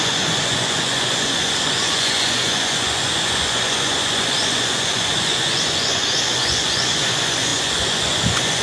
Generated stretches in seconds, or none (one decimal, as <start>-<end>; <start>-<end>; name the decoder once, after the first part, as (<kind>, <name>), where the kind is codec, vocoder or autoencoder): 0.0-8.6 (vocoder, Vocos)